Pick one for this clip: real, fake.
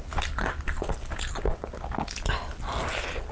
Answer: real